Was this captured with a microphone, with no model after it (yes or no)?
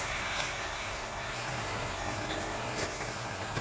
no